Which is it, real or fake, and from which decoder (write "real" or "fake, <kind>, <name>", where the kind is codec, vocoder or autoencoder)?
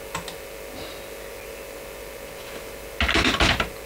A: real